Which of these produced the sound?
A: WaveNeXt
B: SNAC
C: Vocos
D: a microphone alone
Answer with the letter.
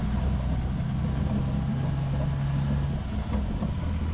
D